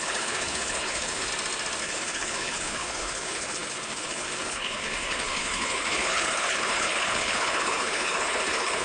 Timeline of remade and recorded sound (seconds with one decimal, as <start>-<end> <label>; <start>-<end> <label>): 0.0-1.3 remade; 1.3-1.8 recorded; 1.8-8.8 remade